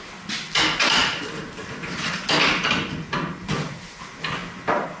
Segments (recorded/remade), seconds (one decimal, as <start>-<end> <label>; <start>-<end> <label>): 0.0-1.0 recorded; 1.0-4.0 remade; 4.0-5.0 recorded